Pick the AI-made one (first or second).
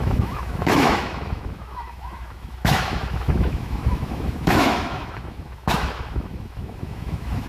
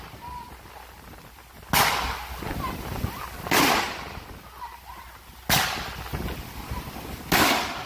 first